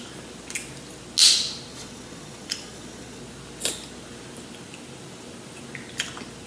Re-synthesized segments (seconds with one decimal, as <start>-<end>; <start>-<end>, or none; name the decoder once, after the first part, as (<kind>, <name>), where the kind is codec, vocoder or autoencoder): 1.7-3.2 (vocoder, Vocos)